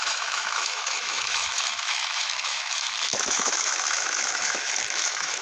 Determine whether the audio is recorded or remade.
remade